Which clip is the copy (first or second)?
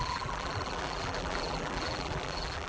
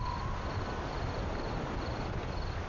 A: first